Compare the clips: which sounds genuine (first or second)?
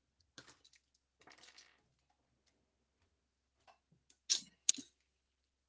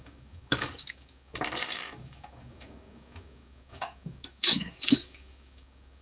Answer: first